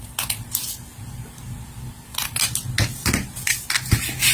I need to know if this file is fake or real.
real